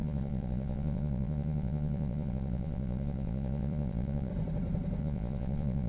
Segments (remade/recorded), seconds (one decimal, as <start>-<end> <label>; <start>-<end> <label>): 0.0-4.3 remade; 4.3-5.0 recorded; 5.0-5.9 remade